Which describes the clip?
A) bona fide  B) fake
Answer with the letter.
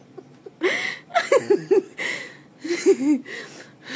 A